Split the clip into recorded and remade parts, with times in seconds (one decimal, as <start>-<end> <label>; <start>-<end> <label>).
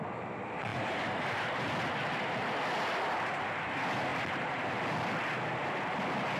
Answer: 0.0-6.4 recorded